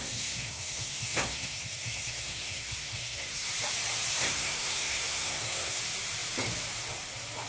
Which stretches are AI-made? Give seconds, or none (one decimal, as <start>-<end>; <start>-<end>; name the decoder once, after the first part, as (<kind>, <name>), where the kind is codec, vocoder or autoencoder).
0.0-3.5 (codec, SNAC); 4.1-5.8